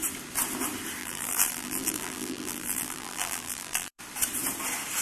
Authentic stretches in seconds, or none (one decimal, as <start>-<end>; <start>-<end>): 0.0-1.0; 4.0-5.0